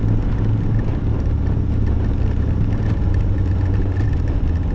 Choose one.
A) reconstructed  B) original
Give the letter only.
B